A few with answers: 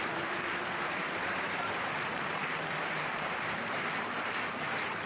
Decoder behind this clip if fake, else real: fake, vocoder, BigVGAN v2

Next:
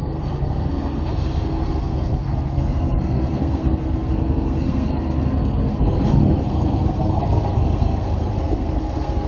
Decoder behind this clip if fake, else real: fake, codec, SNAC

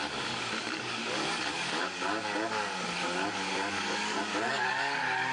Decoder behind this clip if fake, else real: fake, codec, DAC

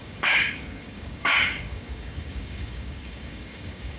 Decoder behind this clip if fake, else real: fake, codec, DAC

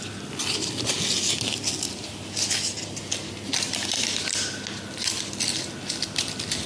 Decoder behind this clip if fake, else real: real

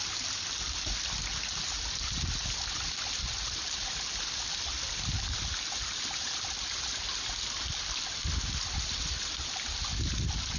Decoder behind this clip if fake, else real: real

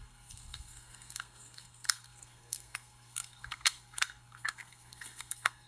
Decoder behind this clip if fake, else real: fake, codec, SNAC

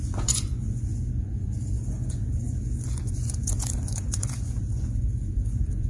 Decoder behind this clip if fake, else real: fake, vocoder, Vocos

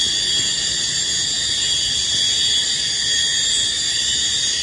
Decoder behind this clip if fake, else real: real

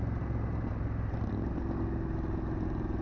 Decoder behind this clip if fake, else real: real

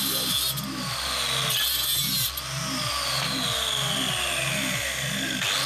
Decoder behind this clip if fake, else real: real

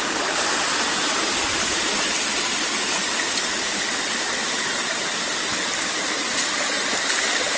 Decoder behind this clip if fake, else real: real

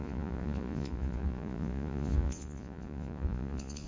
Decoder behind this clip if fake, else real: fake, vocoder, Vocos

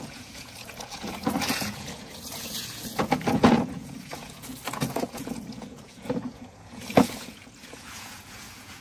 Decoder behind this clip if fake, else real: fake, vocoder, Vocos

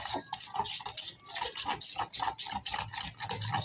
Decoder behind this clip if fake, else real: real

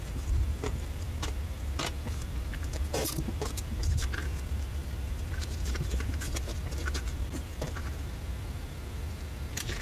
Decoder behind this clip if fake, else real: fake, vocoder, BigVGAN v2